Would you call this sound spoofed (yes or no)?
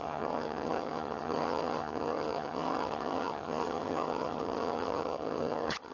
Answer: yes